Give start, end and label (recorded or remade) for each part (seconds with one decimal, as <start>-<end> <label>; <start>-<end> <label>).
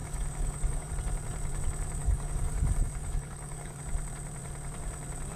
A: 0.0-0.9 remade; 0.9-2.0 recorded; 2.0-3.8 remade; 3.8-5.4 recorded